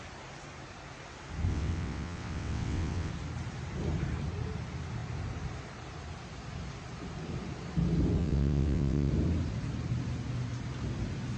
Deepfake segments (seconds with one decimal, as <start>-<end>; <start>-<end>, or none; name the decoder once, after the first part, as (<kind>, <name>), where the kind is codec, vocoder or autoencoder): 1.5-3.1 (vocoder, WaveNeXt); 8.2-9.1